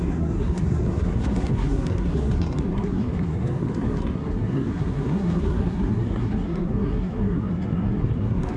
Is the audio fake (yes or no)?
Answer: yes